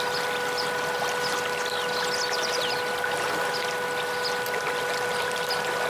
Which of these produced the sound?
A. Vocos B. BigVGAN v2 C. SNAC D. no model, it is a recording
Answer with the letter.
D